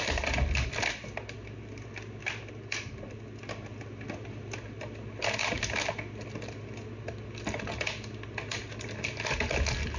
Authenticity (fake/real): real